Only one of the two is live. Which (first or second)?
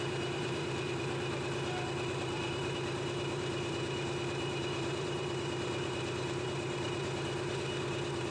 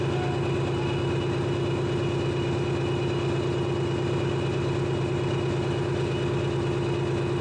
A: second